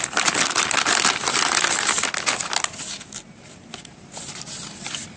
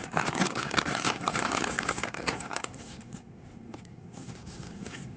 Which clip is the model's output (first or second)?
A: second